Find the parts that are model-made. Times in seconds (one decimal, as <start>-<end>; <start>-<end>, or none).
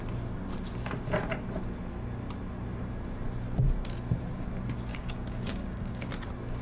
4.9-6.1